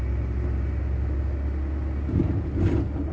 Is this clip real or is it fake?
real